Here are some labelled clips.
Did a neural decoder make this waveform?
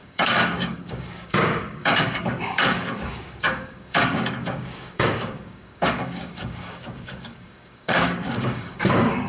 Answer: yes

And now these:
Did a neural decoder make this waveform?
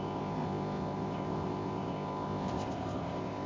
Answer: yes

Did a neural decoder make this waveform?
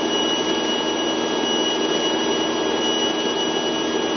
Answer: no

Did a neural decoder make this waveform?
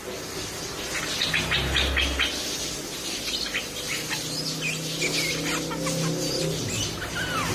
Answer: no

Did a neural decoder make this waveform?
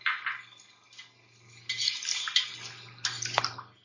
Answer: no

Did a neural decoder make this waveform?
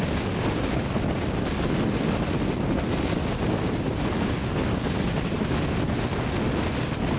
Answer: no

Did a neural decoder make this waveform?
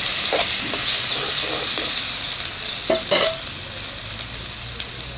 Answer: no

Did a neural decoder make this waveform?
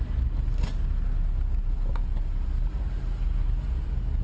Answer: no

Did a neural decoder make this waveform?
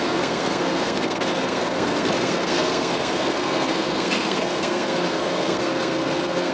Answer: yes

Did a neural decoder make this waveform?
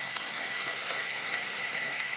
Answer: yes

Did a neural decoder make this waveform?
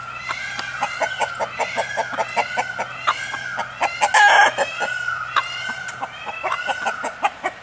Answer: no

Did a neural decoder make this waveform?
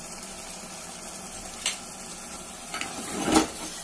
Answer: no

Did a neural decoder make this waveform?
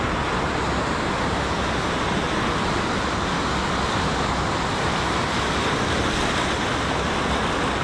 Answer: no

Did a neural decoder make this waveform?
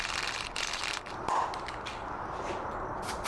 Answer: no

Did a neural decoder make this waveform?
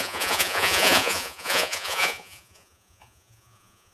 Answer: yes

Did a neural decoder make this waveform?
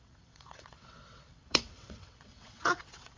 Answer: yes